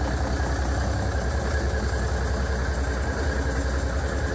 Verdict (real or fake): real